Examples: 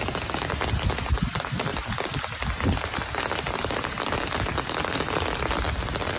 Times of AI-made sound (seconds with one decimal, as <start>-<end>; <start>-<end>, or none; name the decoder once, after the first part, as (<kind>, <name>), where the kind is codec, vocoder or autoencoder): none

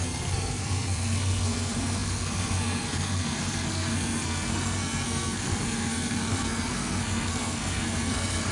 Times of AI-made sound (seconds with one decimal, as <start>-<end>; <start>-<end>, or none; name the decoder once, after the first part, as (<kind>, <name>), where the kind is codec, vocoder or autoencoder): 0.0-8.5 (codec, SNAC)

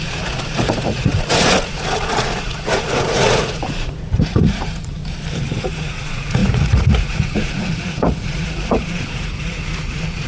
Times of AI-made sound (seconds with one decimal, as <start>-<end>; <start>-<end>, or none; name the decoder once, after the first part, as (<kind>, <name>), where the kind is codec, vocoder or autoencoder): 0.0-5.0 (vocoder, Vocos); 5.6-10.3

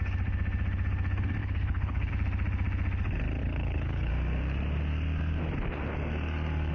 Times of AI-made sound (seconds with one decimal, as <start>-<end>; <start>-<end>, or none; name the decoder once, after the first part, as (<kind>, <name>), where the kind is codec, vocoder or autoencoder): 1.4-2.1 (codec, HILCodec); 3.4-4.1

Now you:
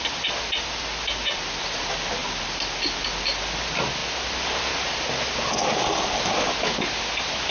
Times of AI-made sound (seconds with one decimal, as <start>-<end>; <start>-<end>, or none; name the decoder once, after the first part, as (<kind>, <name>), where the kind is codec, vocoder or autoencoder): none

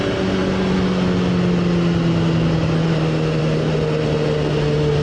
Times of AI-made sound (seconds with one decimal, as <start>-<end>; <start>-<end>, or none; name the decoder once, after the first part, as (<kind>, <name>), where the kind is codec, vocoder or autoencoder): none